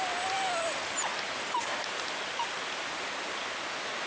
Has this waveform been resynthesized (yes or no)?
no